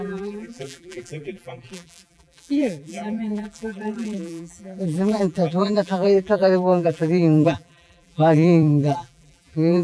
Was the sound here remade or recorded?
remade